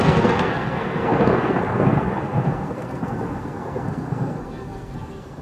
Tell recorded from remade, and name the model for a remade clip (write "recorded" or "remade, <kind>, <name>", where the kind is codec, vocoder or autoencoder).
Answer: remade, codec, SNAC